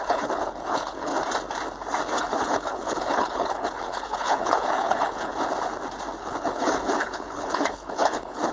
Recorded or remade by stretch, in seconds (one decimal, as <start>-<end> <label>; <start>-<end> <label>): 0.0-1.1 remade; 1.1-2.2 recorded; 2.2-5.3 remade; 5.3-6.2 recorded; 6.2-8.5 remade